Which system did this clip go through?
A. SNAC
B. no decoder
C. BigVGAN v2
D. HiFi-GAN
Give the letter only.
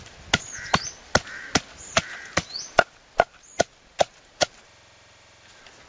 B